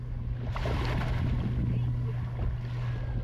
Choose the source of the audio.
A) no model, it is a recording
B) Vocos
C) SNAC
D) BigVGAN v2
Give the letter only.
A